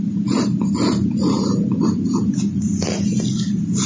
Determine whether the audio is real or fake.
real